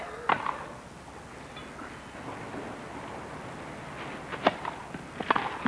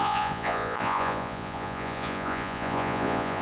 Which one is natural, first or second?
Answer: first